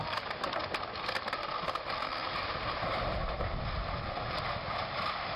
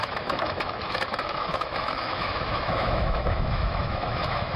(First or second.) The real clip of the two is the first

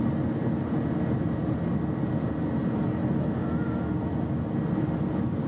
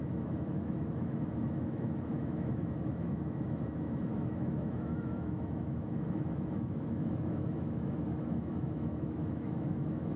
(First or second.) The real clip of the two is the first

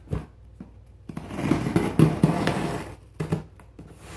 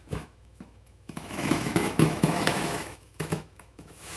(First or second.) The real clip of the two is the first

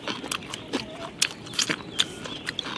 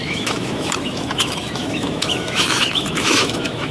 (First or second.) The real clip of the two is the first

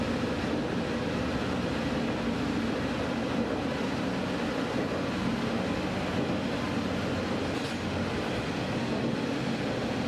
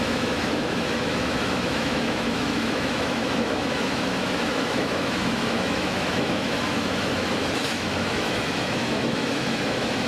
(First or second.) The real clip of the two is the first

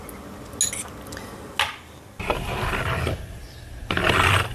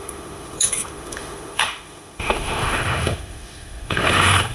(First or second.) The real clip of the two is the first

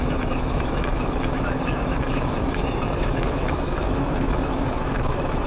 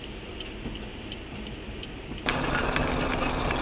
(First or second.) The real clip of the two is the second